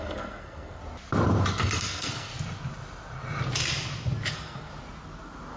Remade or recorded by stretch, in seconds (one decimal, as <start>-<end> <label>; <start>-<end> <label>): 0.0-0.8 remade; 0.8-1.5 recorded; 1.5-2.3 remade; 2.3-4.3 recorded; 4.3-4.7 remade; 4.7-5.6 recorded